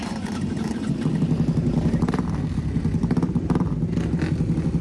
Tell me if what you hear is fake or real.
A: real